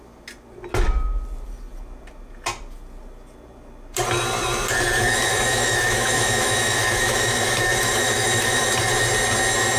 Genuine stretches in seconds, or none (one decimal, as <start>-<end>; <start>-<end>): 0.0-5.3; 8.6-9.8